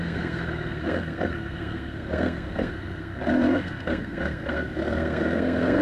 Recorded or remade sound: remade